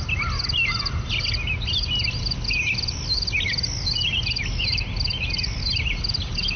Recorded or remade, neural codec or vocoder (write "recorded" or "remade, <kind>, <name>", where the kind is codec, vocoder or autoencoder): recorded